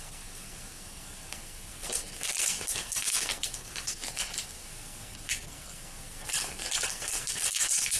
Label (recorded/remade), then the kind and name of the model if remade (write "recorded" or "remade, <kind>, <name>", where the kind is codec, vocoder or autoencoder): remade, codec, SNAC